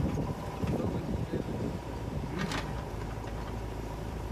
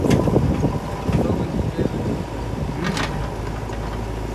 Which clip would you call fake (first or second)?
first